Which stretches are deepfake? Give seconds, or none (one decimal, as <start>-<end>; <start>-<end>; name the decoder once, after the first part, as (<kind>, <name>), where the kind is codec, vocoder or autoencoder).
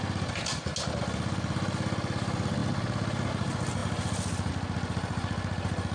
none